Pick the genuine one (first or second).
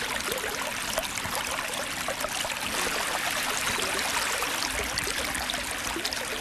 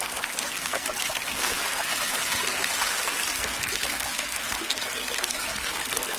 first